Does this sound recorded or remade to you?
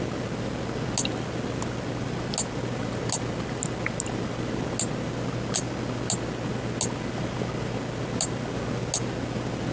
recorded